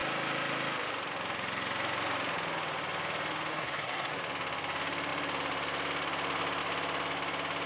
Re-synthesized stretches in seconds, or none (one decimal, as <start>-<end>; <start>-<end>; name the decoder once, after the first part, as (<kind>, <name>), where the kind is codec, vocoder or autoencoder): 3.5-4.1 (codec, SNAC)